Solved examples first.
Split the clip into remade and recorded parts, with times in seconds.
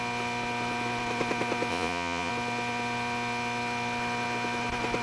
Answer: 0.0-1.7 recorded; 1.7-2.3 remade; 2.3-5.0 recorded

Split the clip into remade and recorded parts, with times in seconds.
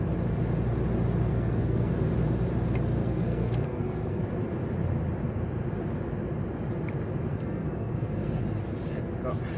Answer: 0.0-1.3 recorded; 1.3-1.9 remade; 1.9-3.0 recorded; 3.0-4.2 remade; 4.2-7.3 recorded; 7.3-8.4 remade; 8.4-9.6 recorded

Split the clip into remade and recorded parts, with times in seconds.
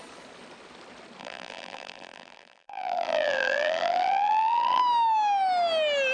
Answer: 0.0-1.2 recorded; 1.2-4.8 remade; 4.8-6.1 recorded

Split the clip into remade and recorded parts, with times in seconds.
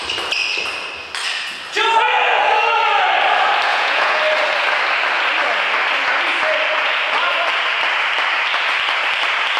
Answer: 0.0-3.7 recorded; 3.7-4.2 remade; 4.2-9.6 recorded